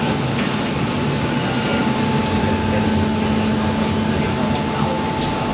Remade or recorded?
recorded